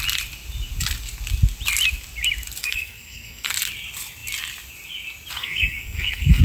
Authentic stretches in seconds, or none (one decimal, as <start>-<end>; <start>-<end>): 0.0-2.6; 3.5-5.4